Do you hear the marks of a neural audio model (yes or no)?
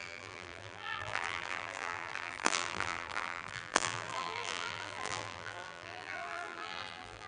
yes